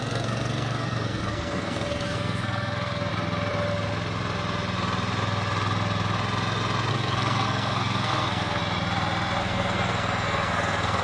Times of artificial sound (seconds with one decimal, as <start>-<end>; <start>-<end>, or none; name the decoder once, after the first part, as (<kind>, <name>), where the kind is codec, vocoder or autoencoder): 0.0-3.1 (codec, SNAC); 6.9-8.6; 9.4-11.0